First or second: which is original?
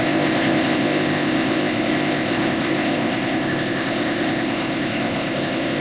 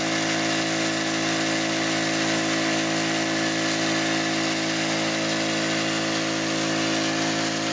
second